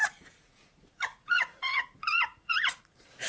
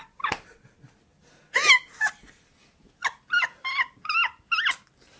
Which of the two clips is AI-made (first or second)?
first